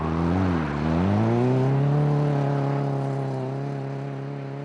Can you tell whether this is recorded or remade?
recorded